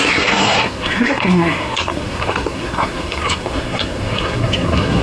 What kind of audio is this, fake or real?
fake